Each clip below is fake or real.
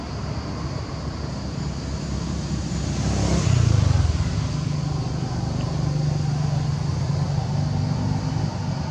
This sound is real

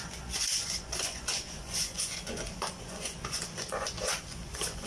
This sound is fake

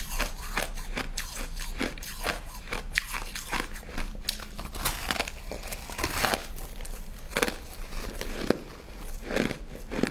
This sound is real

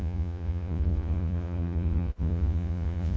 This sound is fake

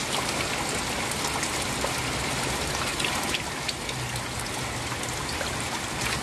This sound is real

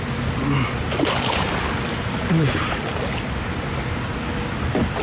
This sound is real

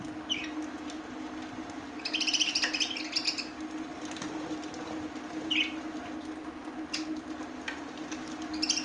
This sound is real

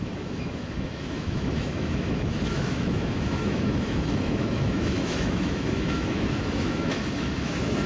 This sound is fake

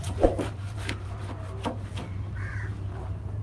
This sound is fake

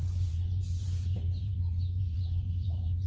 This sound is fake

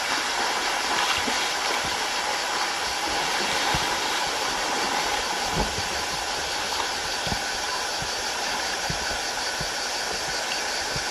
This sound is real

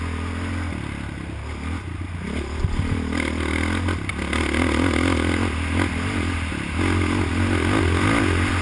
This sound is real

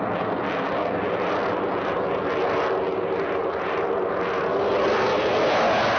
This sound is real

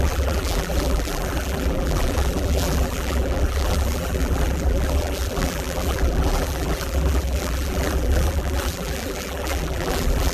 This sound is fake